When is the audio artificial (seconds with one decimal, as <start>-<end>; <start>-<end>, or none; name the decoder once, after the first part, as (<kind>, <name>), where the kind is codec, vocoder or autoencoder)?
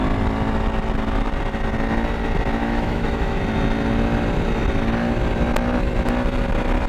2.6-3.4 (autoencoder, DAC-VAE)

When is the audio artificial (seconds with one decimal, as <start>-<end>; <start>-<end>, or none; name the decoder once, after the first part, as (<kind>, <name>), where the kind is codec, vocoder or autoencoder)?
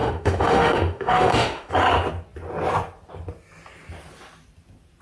0.0-1.7 (autoencoder, DAC-VAE)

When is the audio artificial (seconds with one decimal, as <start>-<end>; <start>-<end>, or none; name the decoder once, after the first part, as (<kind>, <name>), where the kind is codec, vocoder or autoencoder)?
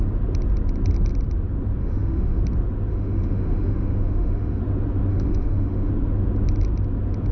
1.8-2.4 (autoencoder, DAC-VAE); 2.9-4.6; 5.1-5.9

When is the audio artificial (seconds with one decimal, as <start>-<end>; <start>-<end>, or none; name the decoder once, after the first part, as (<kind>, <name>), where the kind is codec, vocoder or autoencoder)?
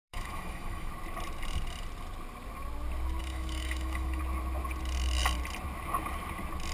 0.0-0.9 (autoencoder, DAC-VAE); 3.2-4.2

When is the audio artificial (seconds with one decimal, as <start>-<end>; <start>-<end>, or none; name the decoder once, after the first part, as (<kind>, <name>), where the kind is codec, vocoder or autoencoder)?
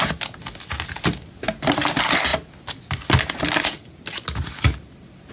none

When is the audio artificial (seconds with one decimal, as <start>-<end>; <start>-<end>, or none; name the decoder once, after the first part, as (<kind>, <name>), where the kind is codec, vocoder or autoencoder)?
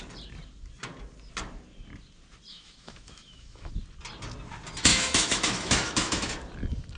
2.5-3.7 (autoencoder, DAC-VAE); 4.9-6.3